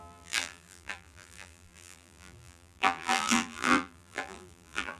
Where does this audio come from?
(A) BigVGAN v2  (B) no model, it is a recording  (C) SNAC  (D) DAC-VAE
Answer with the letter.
A